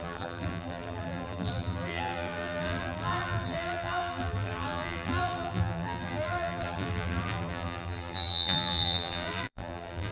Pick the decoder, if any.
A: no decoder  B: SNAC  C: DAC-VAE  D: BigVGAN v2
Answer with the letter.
D